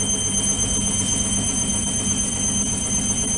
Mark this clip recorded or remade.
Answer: recorded